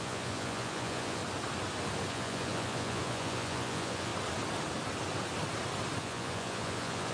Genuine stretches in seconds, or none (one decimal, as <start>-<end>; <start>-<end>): 1.2-2.1; 4.1-6.0